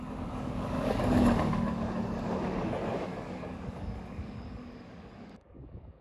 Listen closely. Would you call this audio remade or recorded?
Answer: remade